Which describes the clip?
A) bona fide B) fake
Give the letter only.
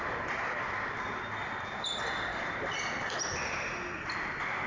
A